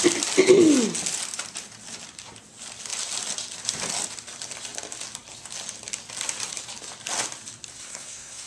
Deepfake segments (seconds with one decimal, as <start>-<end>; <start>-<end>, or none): 7.7-8.5